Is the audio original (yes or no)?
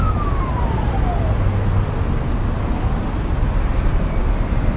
yes